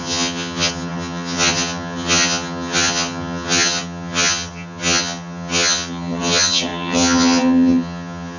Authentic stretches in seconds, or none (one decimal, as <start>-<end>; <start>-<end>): none